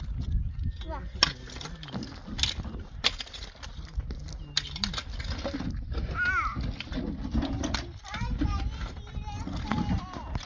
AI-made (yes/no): no